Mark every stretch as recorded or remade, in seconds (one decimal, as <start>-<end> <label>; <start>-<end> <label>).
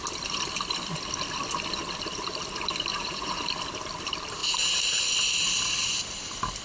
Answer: 0.0-2.9 recorded; 2.9-3.4 remade; 3.4-4.4 recorded; 4.4-5.0 remade; 5.0-6.6 recorded